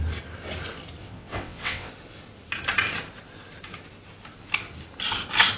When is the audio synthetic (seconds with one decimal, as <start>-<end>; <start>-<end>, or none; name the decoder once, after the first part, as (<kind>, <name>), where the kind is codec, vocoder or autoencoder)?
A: 1.0-1.9 (vocoder, WaveNeXt)